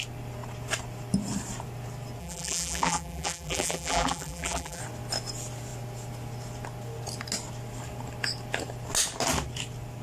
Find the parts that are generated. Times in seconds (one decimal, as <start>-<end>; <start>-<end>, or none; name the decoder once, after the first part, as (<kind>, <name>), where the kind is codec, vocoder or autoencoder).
2.2-4.8 (vocoder, BigVGAN v2)